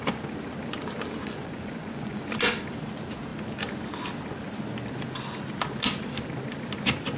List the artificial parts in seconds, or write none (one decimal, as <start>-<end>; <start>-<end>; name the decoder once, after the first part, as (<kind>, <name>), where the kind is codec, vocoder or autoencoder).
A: 1.2-2.2 (vocoder, Vocos)